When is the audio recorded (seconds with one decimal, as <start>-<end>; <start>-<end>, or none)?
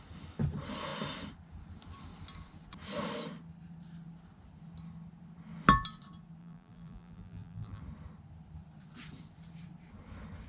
0.0-6.4; 7.8-10.5